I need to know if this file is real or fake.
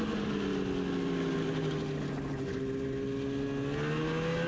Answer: real